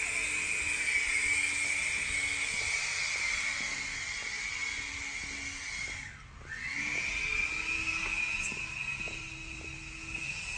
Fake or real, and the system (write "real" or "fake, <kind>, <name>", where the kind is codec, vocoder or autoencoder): real